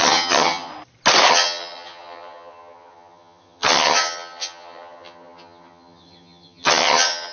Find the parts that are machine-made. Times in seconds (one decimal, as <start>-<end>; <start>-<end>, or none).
0.0-0.7; 1.3-7.3